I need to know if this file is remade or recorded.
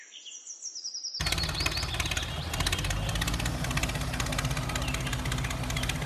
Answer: recorded